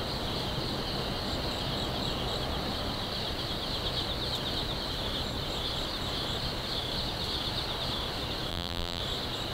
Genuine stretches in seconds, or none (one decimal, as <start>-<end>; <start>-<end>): 0.0-8.5; 9.0-9.5